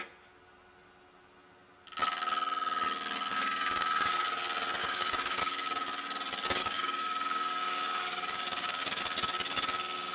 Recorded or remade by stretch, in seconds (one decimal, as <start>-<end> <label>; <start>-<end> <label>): 0.0-3.3 recorded; 3.3-4.2 remade; 4.2-4.8 recorded; 4.8-5.4 remade; 5.4-6.6 recorded; 6.6-9.0 remade; 9.0-10.1 recorded